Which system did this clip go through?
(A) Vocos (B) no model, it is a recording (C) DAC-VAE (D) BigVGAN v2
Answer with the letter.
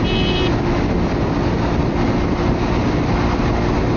B